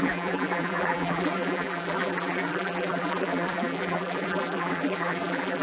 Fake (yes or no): yes